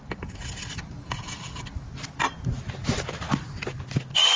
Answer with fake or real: real